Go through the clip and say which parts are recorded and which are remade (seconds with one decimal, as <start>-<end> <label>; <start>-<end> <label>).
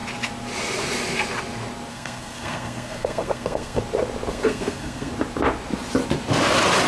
0.0-1.9 recorded; 1.9-3.8 remade; 3.8-4.3 recorded; 4.3-5.1 remade; 5.1-6.9 recorded